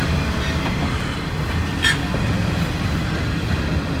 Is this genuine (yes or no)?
yes